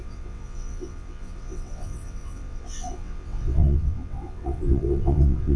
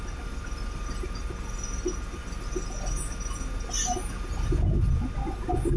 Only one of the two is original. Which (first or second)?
second